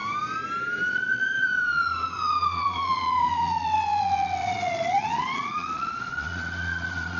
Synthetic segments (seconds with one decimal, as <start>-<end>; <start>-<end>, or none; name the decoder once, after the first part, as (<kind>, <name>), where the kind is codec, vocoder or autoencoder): 0.9-7.2 (vocoder, Vocos)